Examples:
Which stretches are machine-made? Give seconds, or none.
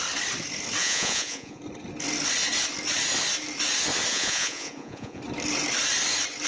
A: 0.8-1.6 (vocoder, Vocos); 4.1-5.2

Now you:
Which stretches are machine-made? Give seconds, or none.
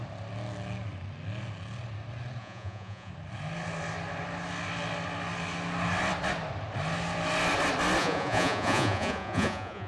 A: 2.4-3.1 (vocoder, Vocos); 8.0-9.9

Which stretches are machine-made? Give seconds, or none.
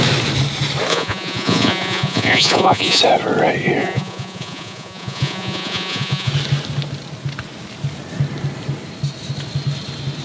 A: 0.9-3.0 (vocoder, Vocos); 3.8-6.3